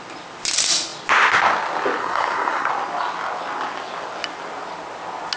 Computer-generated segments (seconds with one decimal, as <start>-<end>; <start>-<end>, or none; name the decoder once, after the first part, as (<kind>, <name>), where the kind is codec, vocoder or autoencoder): 2.0-2.7 (codec, SNAC)